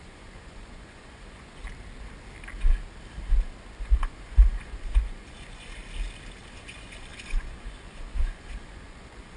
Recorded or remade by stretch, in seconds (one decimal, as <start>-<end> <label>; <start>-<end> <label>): 0.0-1.6 remade; 1.6-3.8 recorded; 3.8-5.8 remade; 5.8-6.4 recorded; 6.4-9.4 remade